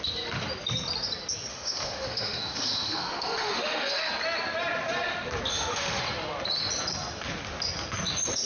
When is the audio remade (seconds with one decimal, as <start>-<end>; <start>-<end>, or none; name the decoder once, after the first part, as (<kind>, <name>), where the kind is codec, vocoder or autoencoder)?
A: 1.5-4.1 (autoencoder, DAC-VAE); 5.5-6.0